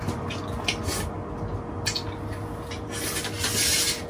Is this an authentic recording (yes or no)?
yes